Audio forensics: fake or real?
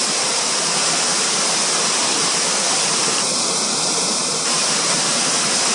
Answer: fake